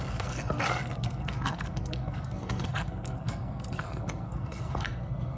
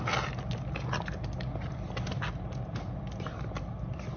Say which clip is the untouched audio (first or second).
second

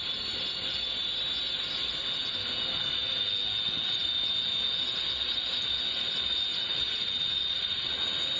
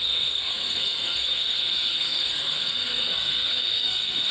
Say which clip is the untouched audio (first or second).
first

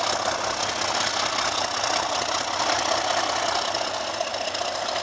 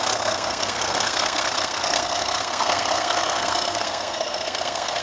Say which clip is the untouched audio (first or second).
first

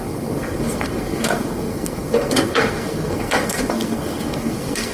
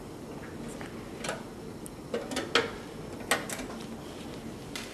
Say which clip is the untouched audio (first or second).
second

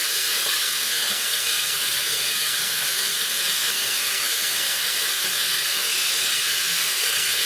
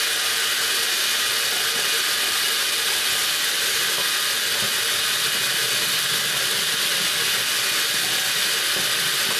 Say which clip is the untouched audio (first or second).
second